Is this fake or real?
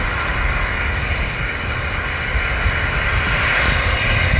real